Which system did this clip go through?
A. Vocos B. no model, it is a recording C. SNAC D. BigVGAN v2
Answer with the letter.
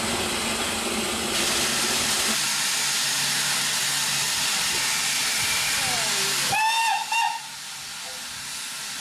B